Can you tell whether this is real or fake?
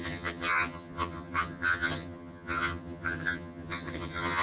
fake